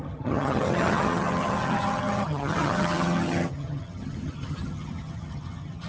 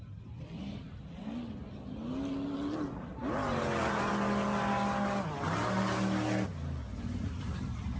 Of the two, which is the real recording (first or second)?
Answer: second